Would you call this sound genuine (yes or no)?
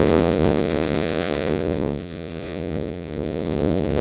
no